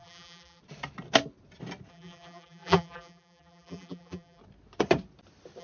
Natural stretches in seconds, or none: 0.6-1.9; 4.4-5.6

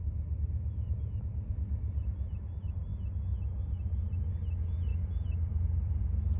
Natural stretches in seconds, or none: 0.0-4.9; 6.0-6.4

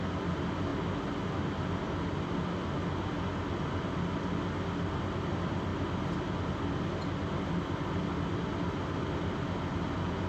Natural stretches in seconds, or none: 0.0-10.3

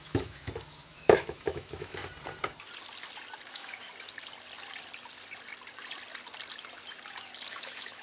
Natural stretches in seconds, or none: 2.0-3.5; 3.9-7.5

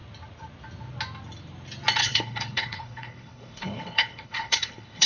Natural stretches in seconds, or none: 0.0-2.0